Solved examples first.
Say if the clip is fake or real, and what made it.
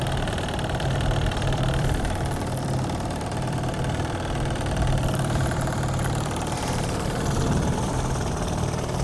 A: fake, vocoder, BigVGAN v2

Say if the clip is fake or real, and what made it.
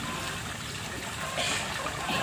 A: real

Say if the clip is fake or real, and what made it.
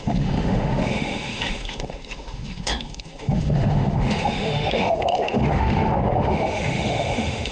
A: fake, autoencoder, DAC-VAE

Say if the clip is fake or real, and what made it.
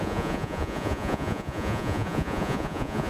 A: fake, vocoder, Vocos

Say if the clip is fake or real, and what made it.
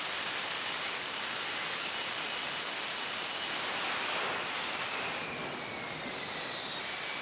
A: real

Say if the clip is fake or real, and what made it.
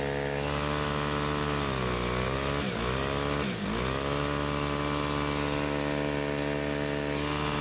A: real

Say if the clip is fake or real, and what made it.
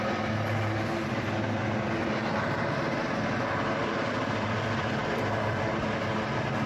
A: real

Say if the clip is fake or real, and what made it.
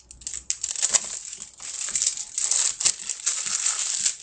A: real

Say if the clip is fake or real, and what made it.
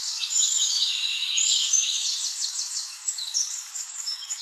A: fake, codec, DAC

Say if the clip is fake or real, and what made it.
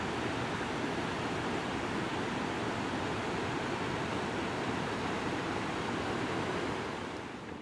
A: real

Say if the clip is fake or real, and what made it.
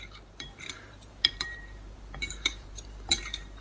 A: fake, vocoder, BigVGAN v2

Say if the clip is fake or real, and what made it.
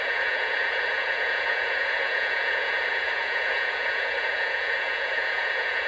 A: fake, vocoder, Vocos